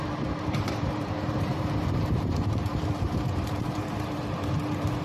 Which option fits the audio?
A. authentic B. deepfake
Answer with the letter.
B